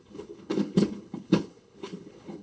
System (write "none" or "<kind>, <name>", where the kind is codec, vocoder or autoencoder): codec, HILCodec